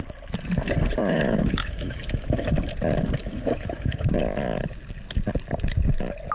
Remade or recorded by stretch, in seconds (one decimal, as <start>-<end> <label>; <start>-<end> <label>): 0.0-1.0 recorded; 1.0-2.5 remade; 2.5-3.2 recorded; 3.2-4.1 remade; 4.1-6.3 recorded